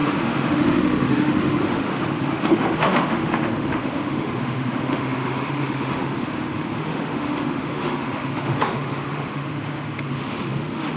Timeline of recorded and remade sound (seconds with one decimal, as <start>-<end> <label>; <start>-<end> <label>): 0.0-11.0 remade